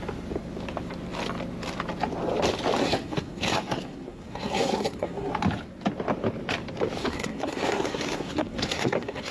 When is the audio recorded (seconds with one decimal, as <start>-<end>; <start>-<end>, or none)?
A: 0.0-2.8; 5.3-7.0